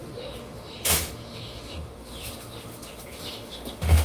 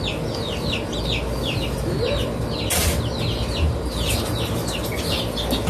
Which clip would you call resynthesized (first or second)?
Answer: first